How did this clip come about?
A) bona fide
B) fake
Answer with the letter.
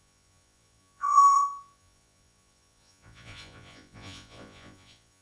B